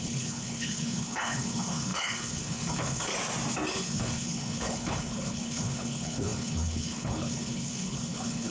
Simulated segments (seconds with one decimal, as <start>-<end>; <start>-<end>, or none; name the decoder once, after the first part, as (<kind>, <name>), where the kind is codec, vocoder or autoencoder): 0.0-3.1 (codec, HILCodec); 3.7-8.5